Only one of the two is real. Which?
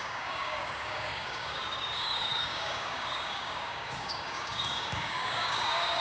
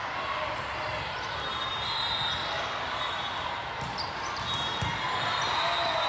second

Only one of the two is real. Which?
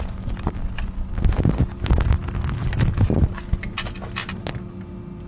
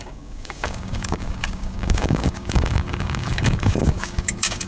first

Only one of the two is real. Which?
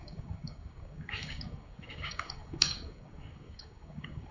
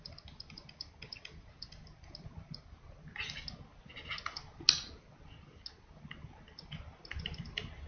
second